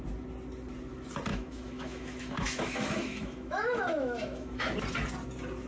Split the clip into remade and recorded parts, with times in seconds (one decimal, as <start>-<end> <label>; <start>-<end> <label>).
0.0-1.3 recorded; 1.3-4.7 remade; 4.7-5.7 recorded